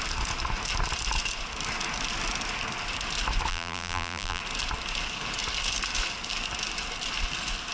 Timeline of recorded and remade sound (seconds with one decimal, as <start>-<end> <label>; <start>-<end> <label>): 0.0-3.5 recorded; 3.5-4.4 remade; 4.4-7.7 recorded